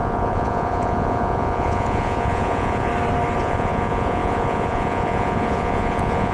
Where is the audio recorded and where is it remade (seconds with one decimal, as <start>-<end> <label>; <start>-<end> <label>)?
0.0-2.9 remade; 2.9-3.4 recorded; 3.4-6.3 remade